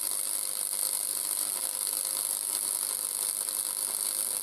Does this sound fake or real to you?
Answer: real